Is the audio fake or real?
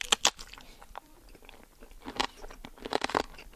real